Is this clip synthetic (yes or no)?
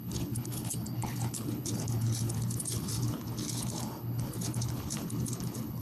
yes